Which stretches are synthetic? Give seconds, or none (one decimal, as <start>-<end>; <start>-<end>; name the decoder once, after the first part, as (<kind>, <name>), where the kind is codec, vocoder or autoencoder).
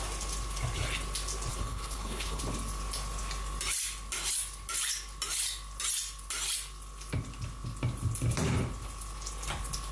1.5-2.4 (codec, HILCodec)